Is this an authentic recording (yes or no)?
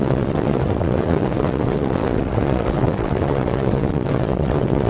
no